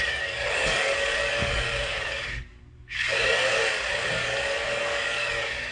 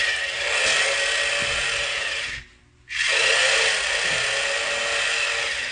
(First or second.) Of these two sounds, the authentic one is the second